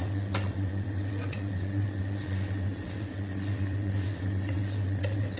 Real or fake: fake